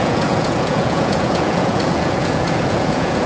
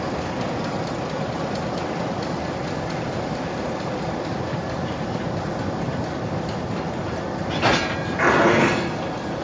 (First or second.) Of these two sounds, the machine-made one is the first